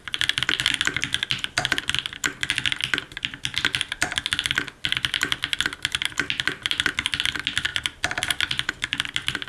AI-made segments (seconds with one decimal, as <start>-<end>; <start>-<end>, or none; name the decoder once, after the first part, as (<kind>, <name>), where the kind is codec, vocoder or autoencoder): none